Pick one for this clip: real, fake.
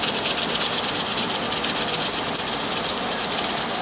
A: real